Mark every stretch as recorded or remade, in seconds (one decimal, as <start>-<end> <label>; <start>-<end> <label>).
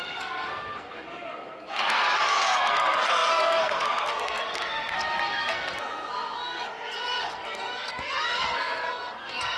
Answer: 0.0-9.6 remade